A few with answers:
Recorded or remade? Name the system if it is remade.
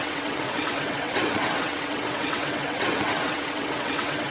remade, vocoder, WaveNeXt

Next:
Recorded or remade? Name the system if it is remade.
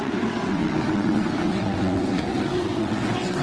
remade, vocoder, WaveNeXt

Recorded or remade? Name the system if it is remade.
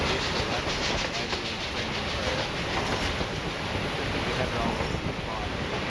recorded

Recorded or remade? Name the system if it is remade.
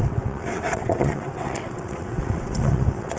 remade, vocoder, WaveNeXt